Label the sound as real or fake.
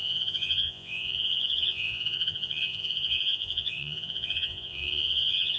fake